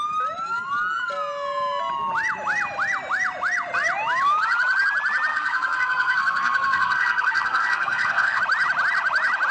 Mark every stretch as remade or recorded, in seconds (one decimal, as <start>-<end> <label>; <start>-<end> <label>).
0.0-5.3 recorded; 5.3-8.4 remade; 8.4-9.5 recorded